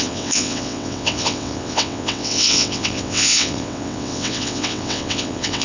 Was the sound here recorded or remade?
remade